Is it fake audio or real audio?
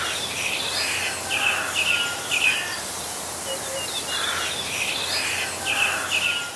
real